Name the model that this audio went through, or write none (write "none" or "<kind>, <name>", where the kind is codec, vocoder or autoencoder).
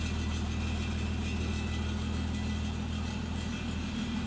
none